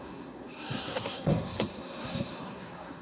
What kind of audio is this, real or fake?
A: fake